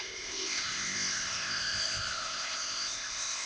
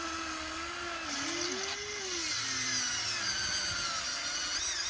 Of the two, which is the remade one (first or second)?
first